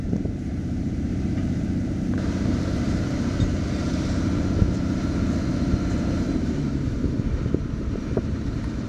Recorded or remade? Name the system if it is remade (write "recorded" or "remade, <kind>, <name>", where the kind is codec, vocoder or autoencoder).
remade, vocoder, BigVGAN v2